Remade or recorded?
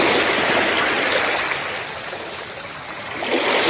recorded